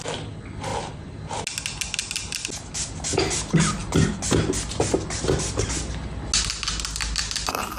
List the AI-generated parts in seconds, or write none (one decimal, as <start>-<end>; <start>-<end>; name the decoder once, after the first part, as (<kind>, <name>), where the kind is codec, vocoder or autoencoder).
0.7-1.4 (vocoder, BigVGAN v2)